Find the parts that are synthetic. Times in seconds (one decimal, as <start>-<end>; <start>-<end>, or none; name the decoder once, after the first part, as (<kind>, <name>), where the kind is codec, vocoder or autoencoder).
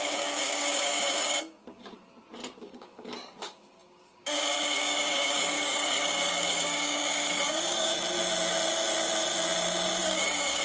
0.0-2.0 (codec, DAC); 2.6-7.9; 10.0-10.6